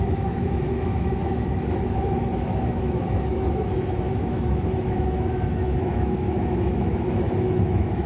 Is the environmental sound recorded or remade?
remade